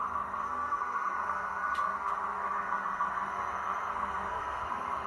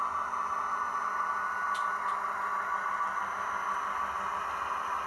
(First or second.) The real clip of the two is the second